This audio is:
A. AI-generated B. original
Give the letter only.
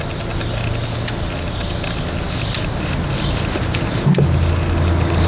B